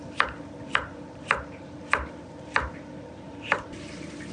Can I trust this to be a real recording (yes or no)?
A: no